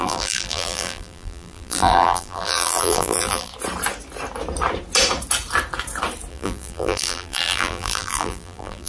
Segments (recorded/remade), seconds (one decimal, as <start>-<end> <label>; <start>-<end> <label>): 0.0-3.5 remade; 3.5-6.3 recorded; 6.3-8.9 remade